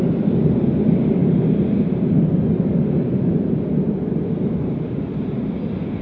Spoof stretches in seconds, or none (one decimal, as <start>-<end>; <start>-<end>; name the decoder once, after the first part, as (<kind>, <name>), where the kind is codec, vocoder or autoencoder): none